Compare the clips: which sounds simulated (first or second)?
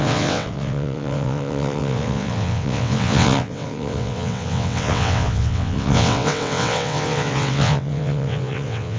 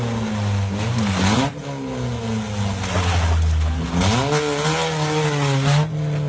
first